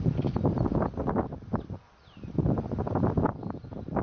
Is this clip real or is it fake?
real